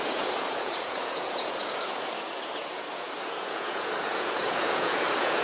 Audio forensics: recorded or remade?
remade